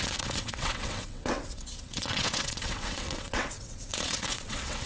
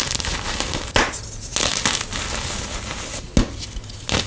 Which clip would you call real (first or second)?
second